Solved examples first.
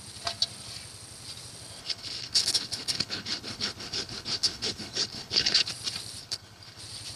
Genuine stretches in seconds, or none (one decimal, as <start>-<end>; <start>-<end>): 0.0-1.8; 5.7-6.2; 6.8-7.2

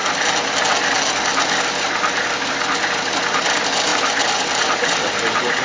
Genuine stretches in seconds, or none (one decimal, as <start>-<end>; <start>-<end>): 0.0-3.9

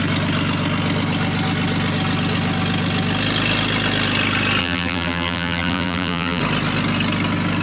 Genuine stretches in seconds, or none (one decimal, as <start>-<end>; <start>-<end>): 0.0-4.6; 6.4-7.6

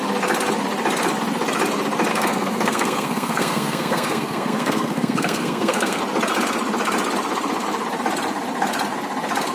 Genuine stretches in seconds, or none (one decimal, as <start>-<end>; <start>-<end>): 0.0-2.1; 6.0-9.5

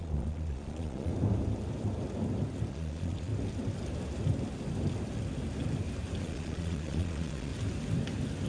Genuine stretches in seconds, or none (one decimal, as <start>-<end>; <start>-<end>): 1.1-2.7; 3.3-6.2; 7.5-8.5

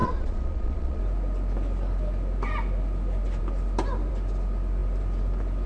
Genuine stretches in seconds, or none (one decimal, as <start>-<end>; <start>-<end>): 1.0-5.7